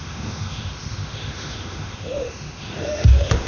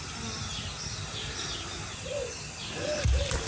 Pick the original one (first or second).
second